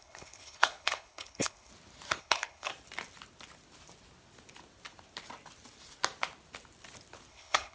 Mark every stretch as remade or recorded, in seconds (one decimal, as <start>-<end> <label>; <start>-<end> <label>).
0.0-1.7 remade; 1.7-2.2 recorded; 2.2-2.7 remade; 2.7-7.3 recorded; 7.3-7.7 remade

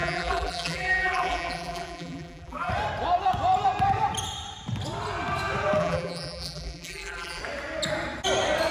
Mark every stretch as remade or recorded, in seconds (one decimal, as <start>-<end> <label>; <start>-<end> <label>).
0.0-2.7 remade; 2.7-5.8 recorded; 5.8-7.4 remade; 7.4-8.7 recorded

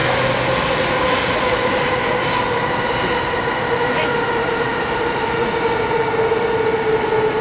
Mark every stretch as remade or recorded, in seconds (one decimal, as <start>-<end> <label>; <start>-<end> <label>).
0.0-7.4 recorded

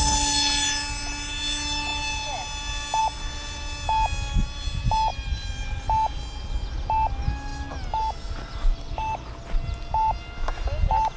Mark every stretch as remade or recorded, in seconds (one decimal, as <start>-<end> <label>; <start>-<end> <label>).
0.0-5.1 recorded; 5.1-5.8 remade; 5.8-11.2 recorded

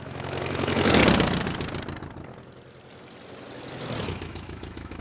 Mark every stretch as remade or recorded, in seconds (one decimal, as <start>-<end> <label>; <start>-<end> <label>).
0.0-1.0 remade; 1.0-4.0 recorded; 4.0-5.0 remade